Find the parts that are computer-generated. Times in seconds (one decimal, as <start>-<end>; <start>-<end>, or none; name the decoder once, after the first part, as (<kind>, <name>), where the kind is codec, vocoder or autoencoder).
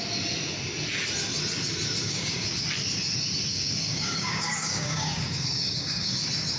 2.0-2.5 (codec, DAC); 3.5-6.1